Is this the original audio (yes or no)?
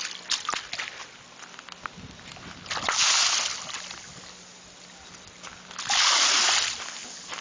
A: yes